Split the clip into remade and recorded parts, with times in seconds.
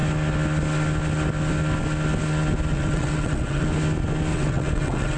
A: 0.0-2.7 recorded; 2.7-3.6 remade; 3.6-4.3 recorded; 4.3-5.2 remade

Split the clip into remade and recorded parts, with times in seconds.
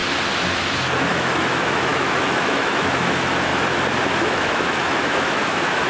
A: 0.0-1.1 recorded; 1.1-3.5 remade; 3.5-4.2 recorded; 4.2-5.9 remade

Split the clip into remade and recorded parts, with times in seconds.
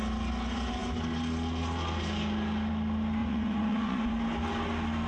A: 0.0-3.2 recorded; 3.2-4.1 remade; 4.1-5.1 recorded